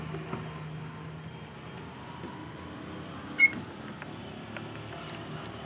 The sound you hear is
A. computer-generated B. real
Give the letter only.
B